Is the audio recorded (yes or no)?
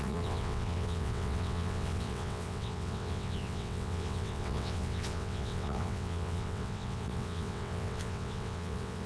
no